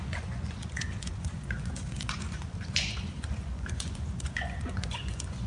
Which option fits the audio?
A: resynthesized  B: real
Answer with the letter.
A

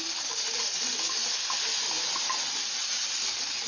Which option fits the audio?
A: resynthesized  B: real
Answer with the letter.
B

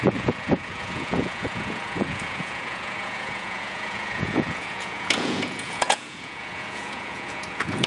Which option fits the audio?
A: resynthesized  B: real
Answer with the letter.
A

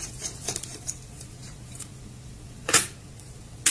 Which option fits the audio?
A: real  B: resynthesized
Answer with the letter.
B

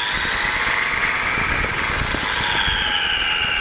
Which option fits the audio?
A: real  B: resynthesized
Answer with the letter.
A